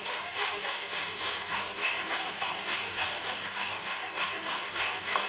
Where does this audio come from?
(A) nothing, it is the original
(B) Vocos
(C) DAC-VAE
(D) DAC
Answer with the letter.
D